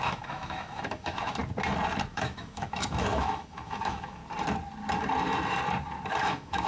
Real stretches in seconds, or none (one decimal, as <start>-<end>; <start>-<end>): 1.4-2.1; 4.2-6.2